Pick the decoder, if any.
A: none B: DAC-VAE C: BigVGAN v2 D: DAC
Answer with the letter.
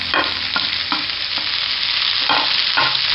A